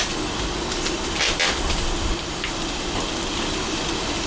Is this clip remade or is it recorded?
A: recorded